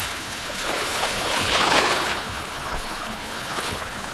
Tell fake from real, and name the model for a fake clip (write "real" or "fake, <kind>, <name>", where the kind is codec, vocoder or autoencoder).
fake, codec, HILCodec